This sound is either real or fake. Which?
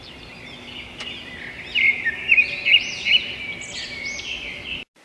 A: real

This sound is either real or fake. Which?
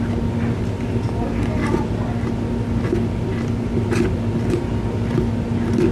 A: real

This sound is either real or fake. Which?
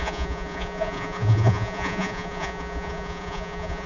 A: fake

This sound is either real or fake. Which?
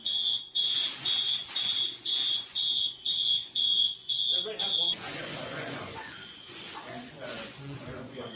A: fake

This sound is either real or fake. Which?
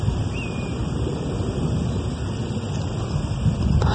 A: real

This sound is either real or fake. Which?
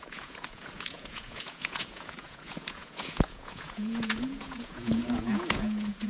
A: fake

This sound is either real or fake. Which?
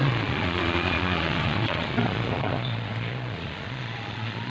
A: fake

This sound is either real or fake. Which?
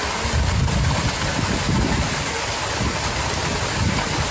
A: real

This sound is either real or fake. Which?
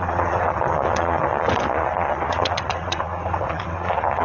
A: fake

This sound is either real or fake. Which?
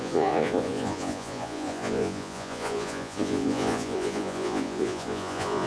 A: fake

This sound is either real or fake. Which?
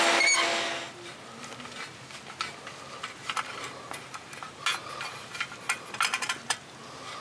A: real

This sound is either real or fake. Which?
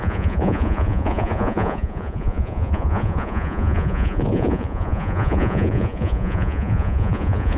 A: fake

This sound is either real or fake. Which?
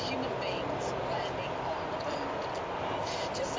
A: real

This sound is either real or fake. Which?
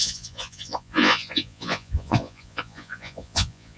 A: fake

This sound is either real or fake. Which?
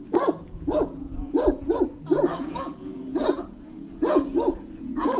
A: fake